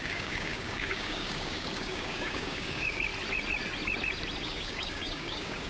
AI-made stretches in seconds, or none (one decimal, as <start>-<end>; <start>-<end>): 0.0-3.1; 4.4-5.7